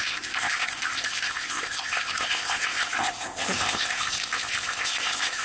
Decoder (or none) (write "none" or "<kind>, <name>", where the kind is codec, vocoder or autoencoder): codec, ZipCodec